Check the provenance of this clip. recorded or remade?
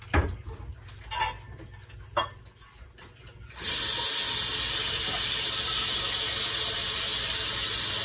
recorded